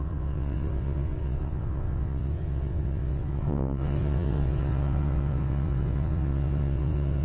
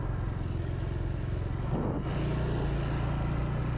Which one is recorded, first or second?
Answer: second